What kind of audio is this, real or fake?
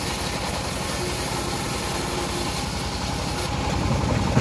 real